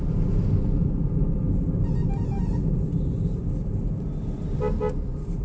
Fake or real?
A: real